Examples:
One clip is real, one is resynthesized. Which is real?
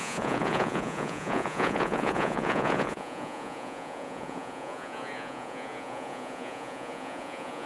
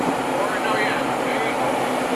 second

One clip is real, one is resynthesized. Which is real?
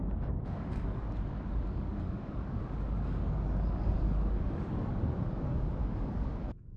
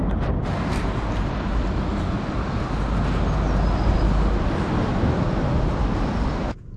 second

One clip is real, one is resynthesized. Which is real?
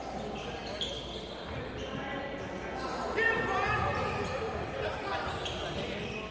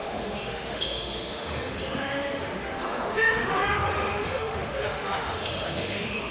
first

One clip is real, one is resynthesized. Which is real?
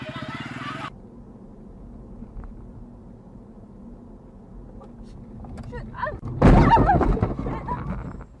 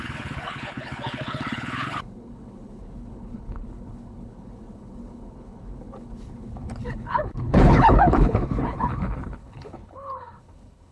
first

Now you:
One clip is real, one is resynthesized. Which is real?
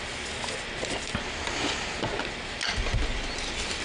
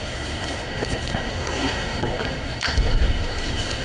first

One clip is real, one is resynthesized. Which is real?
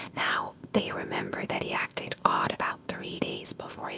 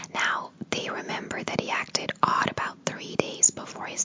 second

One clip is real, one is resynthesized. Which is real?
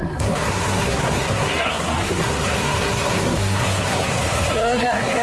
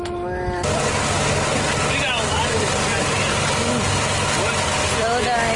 second